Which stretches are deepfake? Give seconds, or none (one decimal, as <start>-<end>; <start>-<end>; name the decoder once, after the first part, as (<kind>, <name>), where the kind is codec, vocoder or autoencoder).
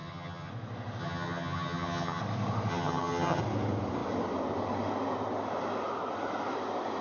0.0-0.5 (vocoder, HiFi-GAN); 1.0-2.2; 2.7-3.4